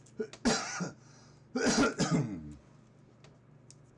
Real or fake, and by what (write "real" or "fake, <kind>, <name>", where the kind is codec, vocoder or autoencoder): real